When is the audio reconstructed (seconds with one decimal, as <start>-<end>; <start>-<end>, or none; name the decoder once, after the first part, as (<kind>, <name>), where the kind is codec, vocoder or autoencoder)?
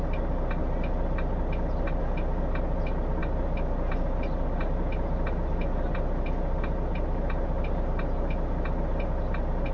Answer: none